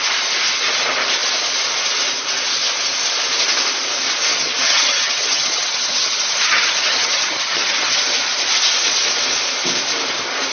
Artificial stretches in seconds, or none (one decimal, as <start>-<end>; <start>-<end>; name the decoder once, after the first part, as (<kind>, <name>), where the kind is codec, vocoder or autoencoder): 4.3-8.0 (vocoder, HiFi-GAN)